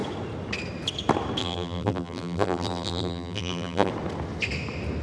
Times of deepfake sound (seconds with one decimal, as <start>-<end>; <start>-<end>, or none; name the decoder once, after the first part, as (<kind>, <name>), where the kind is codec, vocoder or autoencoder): 1.4-3.9 (vocoder, BigVGAN v2)